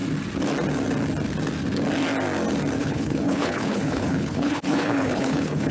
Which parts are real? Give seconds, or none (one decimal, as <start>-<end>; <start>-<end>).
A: 0.0-2.8